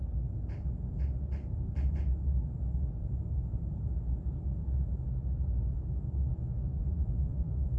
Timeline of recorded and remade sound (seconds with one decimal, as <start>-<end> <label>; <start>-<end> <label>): 0.0-6.3 recorded; 6.3-7.8 remade